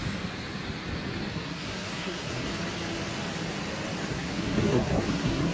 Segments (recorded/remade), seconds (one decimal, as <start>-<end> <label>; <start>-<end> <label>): 0.0-1.3 recorded; 1.3-2.5 remade; 2.5-4.1 recorded; 4.1-5.5 remade